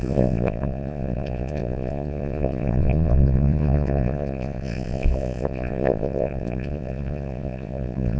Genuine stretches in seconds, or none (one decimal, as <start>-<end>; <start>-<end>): none